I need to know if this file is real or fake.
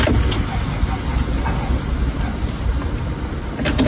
real